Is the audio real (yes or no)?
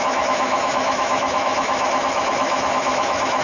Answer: no